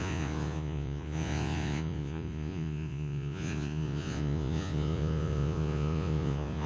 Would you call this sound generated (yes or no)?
yes